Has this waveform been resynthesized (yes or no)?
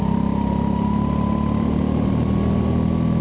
no